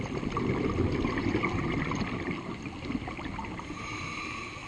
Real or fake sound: real